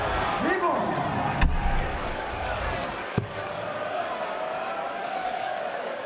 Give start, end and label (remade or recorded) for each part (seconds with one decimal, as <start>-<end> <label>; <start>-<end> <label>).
0.0-1.9 recorded; 1.9-2.6 remade; 2.6-3.1 recorded; 3.1-4.0 remade; 4.0-5.0 recorded; 5.0-6.1 remade